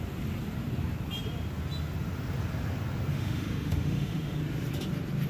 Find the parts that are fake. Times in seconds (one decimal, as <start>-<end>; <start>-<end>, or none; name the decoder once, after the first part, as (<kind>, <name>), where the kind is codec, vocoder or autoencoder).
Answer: 3.1-4.4 (autoencoder, DAC-VAE)